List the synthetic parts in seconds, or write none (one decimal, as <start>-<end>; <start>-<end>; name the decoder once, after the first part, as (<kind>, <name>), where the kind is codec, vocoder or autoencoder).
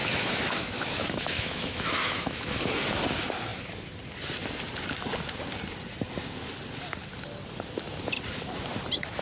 0.0-2.6 (autoencoder, DAC-VAE)